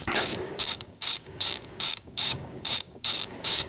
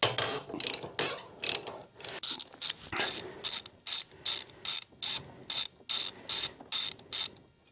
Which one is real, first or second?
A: second